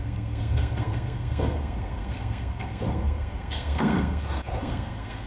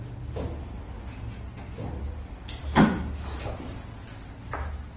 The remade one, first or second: first